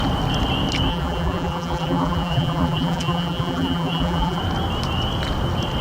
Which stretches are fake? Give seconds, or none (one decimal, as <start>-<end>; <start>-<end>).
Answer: 0.9-4.4